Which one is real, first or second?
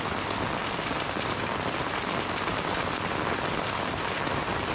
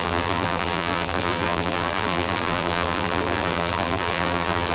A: first